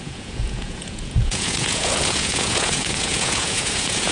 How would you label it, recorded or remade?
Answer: remade